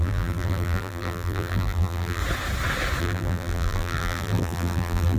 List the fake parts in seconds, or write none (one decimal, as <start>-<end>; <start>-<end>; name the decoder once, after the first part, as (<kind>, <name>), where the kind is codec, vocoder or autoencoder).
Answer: 0.0-2.2 (vocoder, BigVGAN v2); 3.0-5.2